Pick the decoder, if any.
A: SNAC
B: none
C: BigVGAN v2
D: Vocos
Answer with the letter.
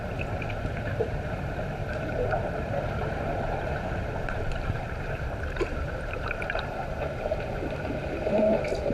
C